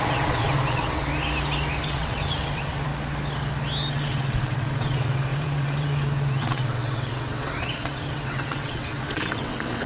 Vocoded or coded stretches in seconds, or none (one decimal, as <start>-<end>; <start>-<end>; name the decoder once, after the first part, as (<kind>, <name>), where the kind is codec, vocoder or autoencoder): 0.0-1.1 (vocoder, WaveNeXt); 1.8-2.9; 3.9-9.9